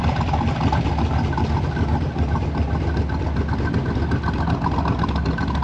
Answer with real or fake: real